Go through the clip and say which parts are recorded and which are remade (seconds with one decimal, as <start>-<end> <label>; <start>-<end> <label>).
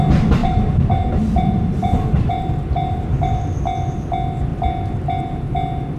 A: 0.0-0.4 recorded; 0.4-3.5 remade; 3.5-6.0 recorded